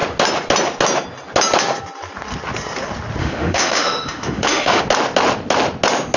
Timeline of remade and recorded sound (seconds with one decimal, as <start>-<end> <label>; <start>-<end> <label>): 0.0-3.2 recorded; 3.2-4.8 remade; 4.8-6.2 recorded